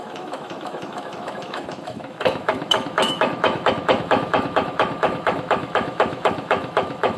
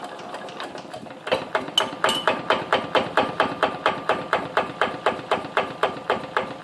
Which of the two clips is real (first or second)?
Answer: second